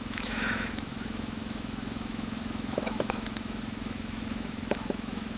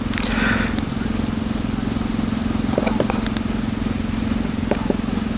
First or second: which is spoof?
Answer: first